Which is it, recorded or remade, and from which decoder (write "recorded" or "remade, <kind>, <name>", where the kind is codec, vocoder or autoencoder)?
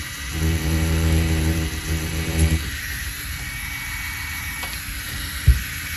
remade, vocoder, BigVGAN v2